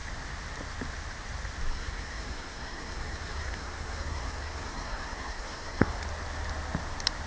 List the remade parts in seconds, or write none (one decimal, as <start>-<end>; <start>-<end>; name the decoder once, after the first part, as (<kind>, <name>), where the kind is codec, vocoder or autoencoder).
1.7-6.0 (codec, SNAC)